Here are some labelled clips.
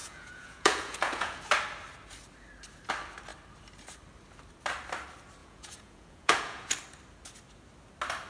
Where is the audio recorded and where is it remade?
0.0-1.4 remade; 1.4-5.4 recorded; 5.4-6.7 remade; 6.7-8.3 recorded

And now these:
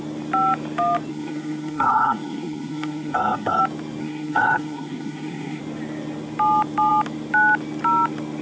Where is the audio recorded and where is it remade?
0.0-1.1 recorded; 1.1-3.6 remade; 3.6-4.0 recorded; 4.0-5.6 remade; 5.6-8.4 recorded

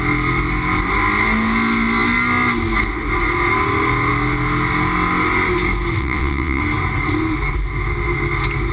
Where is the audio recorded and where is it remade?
0.0-6.0 recorded; 6.0-6.6 remade; 6.6-8.7 recorded

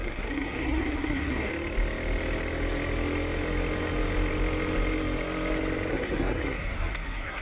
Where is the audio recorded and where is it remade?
0.0-1.5 remade; 1.5-5.9 recorded; 5.9-7.4 remade

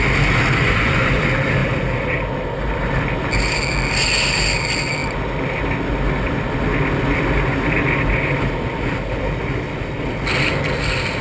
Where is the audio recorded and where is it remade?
0.0-0.6 recorded; 0.6-1.2 remade; 1.2-11.2 recorded